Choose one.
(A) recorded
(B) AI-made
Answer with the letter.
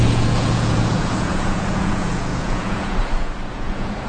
B